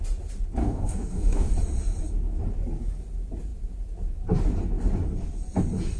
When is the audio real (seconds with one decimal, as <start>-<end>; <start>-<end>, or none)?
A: 0.0-0.6; 1.5-6.0